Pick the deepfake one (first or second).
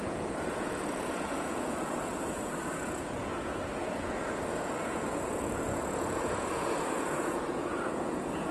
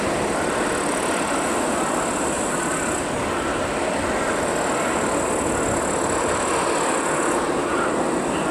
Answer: first